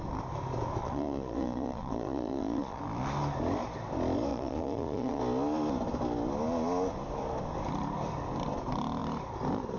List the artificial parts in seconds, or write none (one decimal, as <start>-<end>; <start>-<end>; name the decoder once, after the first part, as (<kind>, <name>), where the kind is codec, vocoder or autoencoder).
0.8-2.8 (vocoder, Vocos); 4.3-5.2